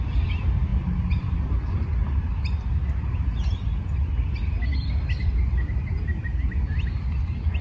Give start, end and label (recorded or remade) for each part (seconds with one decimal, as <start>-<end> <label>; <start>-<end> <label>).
0.0-0.7 recorded; 0.7-1.2 remade; 1.2-7.6 recorded